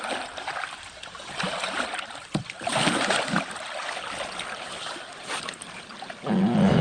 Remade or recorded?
recorded